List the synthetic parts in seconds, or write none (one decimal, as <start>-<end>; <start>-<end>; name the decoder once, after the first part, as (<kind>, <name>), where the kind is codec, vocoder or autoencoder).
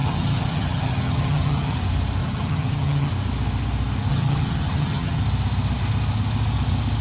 0.0-1.8 (vocoder, HiFi-GAN); 2.2-3.1; 4.1-5.2